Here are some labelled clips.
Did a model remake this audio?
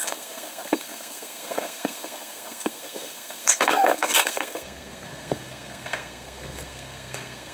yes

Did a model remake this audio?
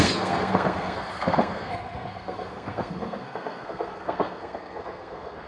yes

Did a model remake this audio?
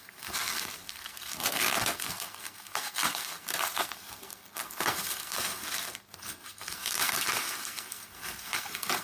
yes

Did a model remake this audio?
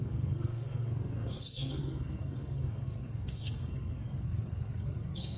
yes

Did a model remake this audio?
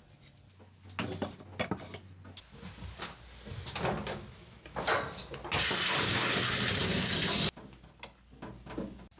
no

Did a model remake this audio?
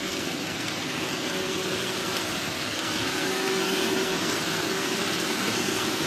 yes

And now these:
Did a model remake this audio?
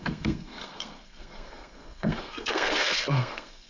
yes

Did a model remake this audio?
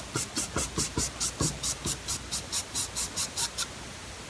no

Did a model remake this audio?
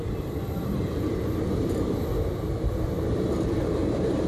no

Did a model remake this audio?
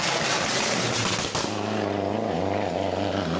no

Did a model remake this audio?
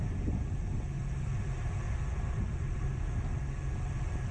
no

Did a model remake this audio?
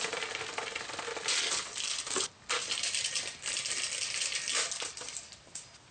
no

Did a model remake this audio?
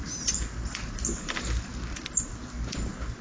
no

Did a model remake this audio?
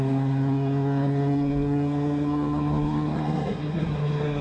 yes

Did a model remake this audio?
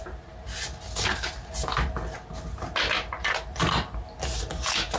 no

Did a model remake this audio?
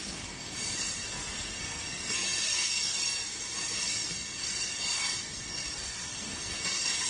yes